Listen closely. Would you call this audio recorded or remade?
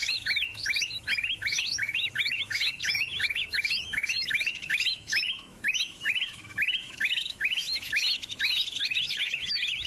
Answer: remade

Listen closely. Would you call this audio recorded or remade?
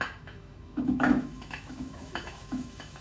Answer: remade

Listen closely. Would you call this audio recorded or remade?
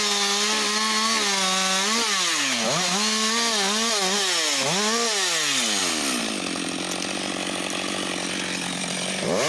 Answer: recorded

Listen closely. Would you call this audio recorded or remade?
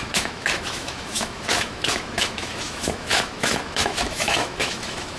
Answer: remade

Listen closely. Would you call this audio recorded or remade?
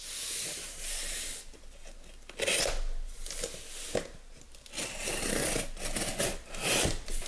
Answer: recorded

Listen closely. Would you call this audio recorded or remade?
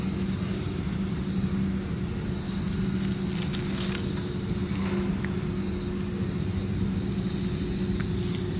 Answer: recorded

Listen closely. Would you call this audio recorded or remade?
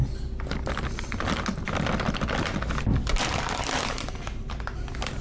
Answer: recorded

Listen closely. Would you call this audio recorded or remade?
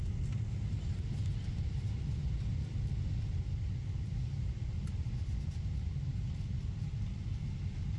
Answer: recorded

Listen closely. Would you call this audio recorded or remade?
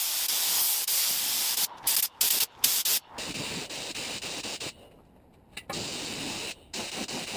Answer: recorded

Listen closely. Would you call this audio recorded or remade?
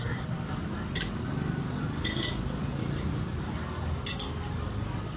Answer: recorded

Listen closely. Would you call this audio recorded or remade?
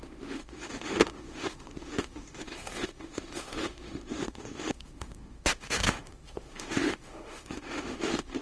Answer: remade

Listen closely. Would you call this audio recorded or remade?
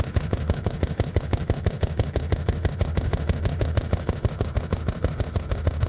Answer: remade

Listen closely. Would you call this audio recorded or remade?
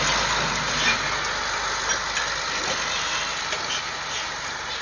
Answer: recorded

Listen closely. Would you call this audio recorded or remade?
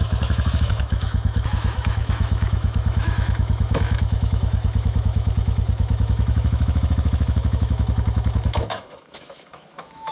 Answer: remade